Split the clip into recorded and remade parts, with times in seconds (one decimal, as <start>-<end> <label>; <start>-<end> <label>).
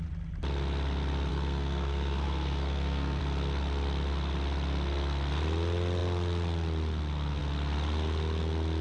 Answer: 0.0-1.3 recorded; 1.3-3.2 remade; 3.2-8.8 recorded